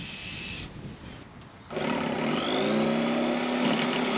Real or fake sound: real